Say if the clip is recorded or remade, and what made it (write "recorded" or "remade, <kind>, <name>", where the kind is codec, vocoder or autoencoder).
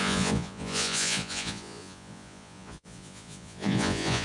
remade, vocoder, Vocos